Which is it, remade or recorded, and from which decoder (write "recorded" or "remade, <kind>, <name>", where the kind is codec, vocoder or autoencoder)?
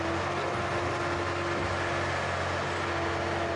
recorded